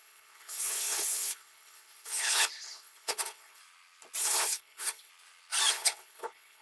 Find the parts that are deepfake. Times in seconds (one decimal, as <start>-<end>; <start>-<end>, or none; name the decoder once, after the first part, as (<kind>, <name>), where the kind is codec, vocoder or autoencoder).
0.0-3.6 (codec, HILCodec); 4.2-5.1; 5.7-6.6